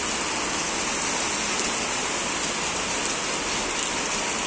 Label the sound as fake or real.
real